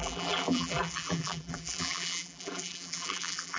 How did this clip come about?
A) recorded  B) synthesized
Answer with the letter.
B